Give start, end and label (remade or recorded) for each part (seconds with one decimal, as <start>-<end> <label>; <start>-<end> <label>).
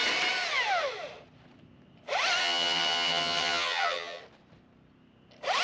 0.0-2.4 recorded; 2.4-4.2 remade; 4.2-5.6 recorded